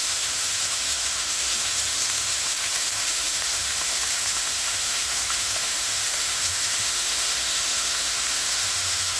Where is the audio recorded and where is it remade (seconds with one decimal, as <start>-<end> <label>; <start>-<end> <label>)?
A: 0.0-9.2 remade